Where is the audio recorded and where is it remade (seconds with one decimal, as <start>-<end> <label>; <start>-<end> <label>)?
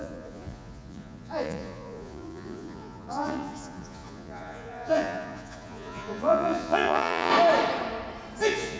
0.0-7.3 remade; 7.3-8.4 recorded; 8.4-8.8 remade